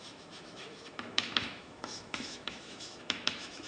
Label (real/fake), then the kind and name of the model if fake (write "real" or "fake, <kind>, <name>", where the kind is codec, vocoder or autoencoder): fake, autoencoder, DAC-VAE